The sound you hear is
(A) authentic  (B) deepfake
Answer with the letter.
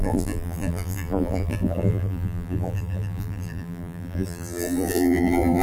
B